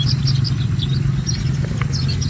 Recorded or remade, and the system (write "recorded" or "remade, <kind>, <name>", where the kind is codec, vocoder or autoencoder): recorded